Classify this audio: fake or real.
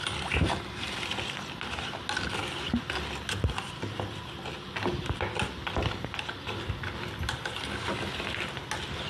real